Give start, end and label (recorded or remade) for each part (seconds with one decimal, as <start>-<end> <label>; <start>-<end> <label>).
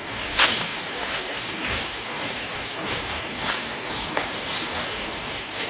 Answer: 0.0-5.7 remade